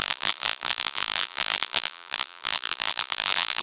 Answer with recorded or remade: remade